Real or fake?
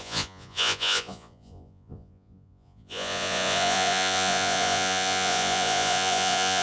fake